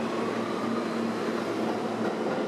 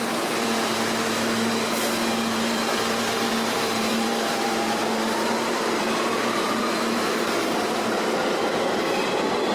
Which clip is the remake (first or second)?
second